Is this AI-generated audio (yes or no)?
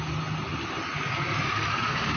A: no